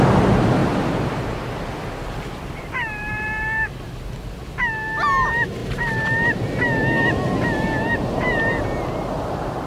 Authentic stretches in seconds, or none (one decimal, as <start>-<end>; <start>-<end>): 0.0-0.6; 2.6-9.7